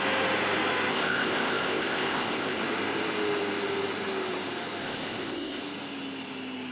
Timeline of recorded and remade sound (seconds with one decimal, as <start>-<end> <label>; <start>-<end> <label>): 0.0-0.9 recorded; 0.9-2.6 remade; 2.6-4.8 recorded; 4.8-5.6 remade; 5.6-6.7 recorded